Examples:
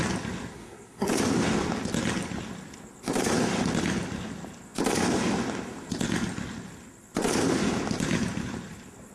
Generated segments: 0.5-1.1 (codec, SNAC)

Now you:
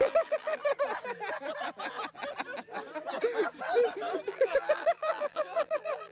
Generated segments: 0.0-0.6 (vocoder, BigVGAN v2); 4.3-6.1